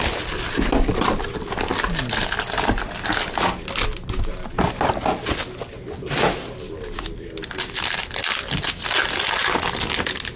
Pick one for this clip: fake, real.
real